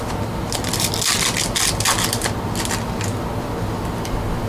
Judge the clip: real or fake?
real